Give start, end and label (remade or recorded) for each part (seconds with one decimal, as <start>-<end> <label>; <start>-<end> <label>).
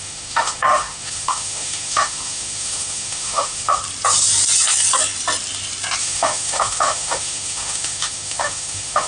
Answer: 0.0-3.8 remade; 3.8-6.0 recorded; 6.0-9.1 remade